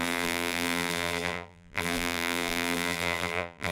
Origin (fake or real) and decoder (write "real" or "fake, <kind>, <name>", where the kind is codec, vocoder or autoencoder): fake, vocoder, BigVGAN v2